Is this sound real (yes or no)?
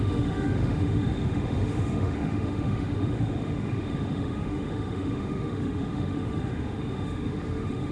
no